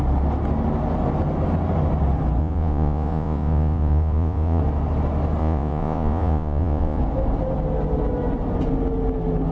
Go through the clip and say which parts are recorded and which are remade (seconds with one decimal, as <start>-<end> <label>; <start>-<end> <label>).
0.0-2.4 recorded; 2.4-4.6 remade; 4.6-5.4 recorded; 5.4-7.0 remade; 7.0-9.5 recorded